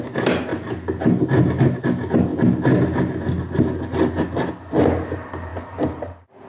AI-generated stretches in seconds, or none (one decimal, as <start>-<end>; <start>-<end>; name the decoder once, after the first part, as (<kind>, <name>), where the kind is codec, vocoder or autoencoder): none